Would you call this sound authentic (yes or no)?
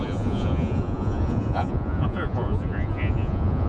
no